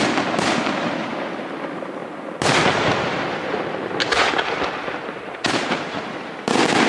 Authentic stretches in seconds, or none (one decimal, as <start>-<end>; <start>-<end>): 0.0-6.9

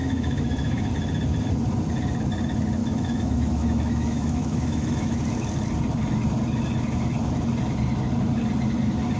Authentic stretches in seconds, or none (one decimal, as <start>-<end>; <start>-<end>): 0.9-2.8; 5.2-9.2